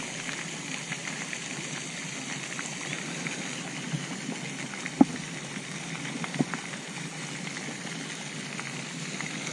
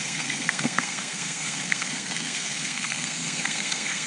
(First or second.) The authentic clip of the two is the first